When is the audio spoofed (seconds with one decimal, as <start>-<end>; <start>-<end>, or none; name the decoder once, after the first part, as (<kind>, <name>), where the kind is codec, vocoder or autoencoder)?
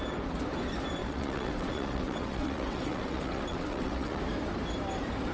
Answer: 1.0-4.2 (vocoder, WaveNeXt)